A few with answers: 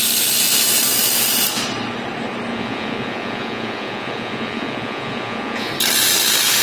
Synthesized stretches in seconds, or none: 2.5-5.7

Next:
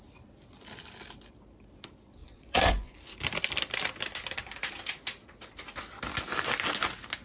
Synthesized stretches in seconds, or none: 2.2-2.9